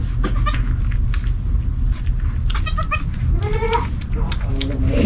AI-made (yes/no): no